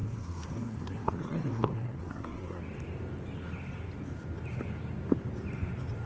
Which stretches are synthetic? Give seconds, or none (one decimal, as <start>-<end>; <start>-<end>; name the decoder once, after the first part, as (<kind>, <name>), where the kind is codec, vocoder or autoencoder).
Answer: 0.0-2.6 (codec, SNAC)

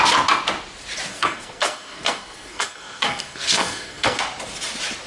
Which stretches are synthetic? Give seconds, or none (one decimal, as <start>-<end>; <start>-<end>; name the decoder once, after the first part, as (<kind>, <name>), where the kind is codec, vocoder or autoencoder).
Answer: 1.1-4.2 (codec, SNAC)

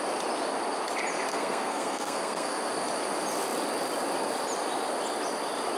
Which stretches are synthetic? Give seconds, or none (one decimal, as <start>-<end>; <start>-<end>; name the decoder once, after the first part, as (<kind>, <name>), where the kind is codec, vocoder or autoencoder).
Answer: 1.3-2.7 (codec, SNAC)

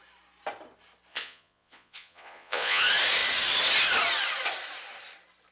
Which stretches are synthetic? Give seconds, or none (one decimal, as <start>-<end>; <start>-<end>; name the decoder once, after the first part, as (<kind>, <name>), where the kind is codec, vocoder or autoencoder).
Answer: 1.1-2.8 (vocoder, Vocos)

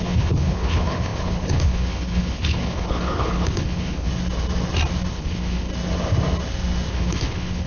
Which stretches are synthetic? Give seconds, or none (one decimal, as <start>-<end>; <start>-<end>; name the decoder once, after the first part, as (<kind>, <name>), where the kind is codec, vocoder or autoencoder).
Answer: 0.0-4.1 (codec, HILCodec); 5.1-5.7; 6.9-7.7

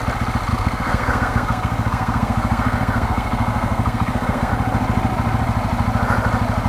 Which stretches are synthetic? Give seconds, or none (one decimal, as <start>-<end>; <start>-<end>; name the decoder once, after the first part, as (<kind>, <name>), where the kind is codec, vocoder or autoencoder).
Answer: 0.5-4.5 (codec, SNAC)

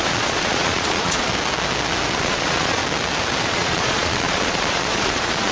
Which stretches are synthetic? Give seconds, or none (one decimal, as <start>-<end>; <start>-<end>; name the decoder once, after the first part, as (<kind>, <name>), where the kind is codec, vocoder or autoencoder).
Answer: 0.0-1.3 (vocoder, Vocos); 2.2-2.8; 3.4-5.5

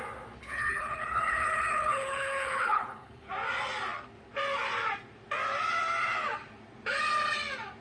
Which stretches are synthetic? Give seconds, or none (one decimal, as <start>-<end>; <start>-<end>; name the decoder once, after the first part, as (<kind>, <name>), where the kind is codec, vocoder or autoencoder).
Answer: 0.4-3.3 (codec, HILCodec)